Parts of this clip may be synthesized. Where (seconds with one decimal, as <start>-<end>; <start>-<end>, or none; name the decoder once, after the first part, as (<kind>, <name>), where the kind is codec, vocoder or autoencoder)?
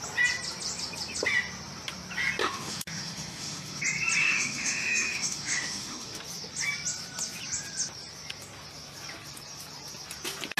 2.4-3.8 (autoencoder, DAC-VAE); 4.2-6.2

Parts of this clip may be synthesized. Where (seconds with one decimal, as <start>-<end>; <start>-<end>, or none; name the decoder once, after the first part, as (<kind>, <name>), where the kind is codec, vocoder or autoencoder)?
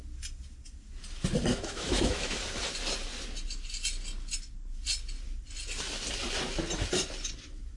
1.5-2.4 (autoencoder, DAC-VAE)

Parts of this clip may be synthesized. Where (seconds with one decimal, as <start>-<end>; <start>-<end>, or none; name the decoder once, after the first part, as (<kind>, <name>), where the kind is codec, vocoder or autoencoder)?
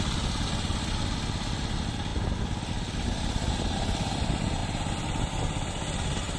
none